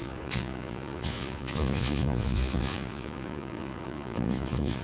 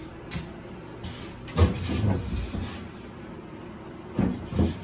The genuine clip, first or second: second